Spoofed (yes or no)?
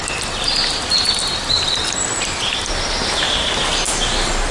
no